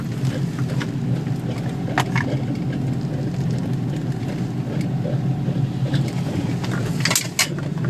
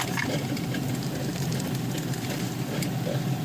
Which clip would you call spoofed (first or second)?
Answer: second